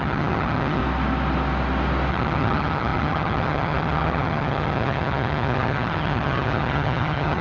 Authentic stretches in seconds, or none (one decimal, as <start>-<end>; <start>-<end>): 0.8-2.1

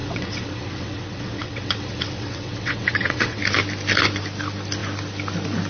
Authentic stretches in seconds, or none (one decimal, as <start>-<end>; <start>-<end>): 3.4-5.7